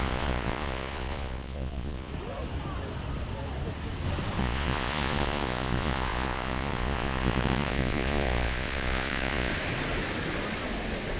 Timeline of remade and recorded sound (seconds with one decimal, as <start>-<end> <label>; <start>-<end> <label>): 0.0-2.1 remade; 2.1-4.4 recorded; 4.4-9.5 remade; 9.5-11.2 recorded